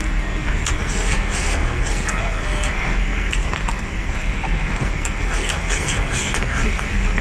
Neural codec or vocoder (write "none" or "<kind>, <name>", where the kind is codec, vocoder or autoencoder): codec, SNAC